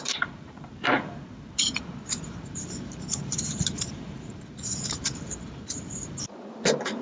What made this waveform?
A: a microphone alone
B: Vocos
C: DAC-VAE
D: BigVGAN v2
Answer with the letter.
D